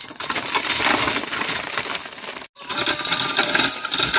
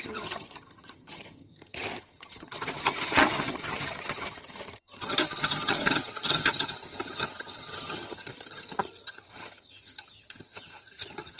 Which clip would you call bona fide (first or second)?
first